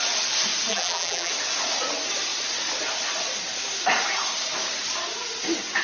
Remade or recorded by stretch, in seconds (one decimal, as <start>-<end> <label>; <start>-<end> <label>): 0.0-0.7 recorded; 0.7-1.3 remade; 1.3-5.8 recorded